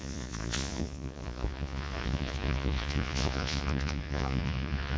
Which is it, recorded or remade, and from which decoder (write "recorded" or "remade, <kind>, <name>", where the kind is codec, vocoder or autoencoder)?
remade, vocoder, Vocos